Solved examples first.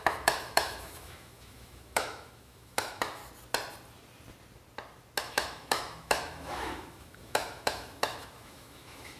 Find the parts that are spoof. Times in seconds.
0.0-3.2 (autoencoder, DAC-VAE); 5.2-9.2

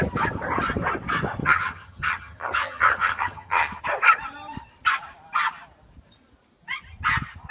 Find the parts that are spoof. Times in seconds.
1.4-3.8 (vocoder, HiFi-GAN)

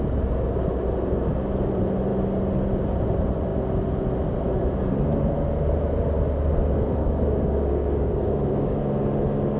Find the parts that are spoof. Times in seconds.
7.0-8.8 (codec, DAC)

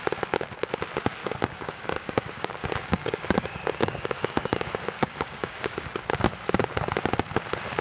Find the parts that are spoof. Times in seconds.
1.2-5.9 (codec, DAC)